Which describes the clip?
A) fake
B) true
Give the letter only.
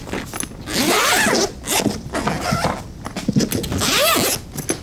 B